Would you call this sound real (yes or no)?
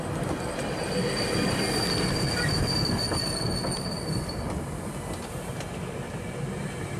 yes